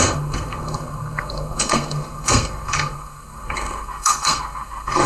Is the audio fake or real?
fake